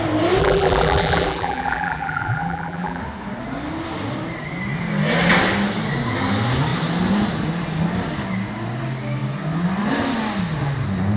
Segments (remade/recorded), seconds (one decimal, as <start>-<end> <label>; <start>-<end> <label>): 0.0-0.4 recorded; 0.4-3.0 remade; 3.0-11.2 recorded